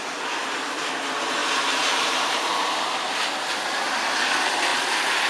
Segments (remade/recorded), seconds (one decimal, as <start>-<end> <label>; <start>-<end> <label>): 0.0-1.4 recorded; 1.4-3.2 remade; 3.2-5.3 recorded